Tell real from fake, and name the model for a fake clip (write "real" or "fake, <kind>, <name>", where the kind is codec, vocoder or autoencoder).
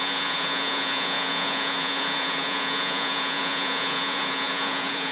fake, vocoder, Vocos